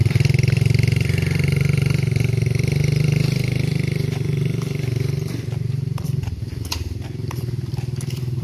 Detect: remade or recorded remade